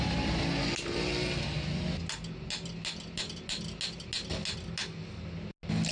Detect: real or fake real